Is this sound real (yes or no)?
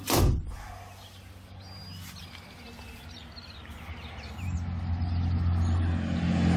yes